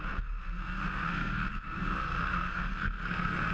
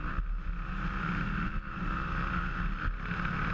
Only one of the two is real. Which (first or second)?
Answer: second